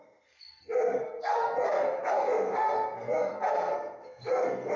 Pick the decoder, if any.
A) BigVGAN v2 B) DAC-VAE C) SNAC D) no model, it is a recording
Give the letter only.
C